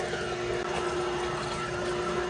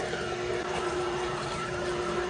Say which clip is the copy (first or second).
second